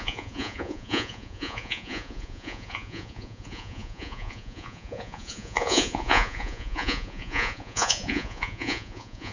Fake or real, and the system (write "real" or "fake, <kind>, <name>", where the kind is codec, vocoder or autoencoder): fake, vocoder, Vocos